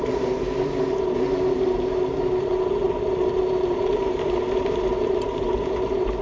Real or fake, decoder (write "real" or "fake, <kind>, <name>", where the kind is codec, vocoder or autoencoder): fake, vocoder, BigVGAN v2